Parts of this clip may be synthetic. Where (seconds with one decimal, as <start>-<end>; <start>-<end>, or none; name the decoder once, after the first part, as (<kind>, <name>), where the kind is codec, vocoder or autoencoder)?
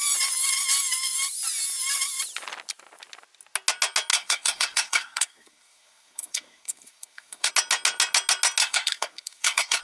4.1-7.5 (codec, SNAC); 8.6-9.8